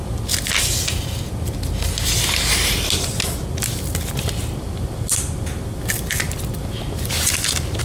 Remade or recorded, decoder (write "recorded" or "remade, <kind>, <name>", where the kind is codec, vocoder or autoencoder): recorded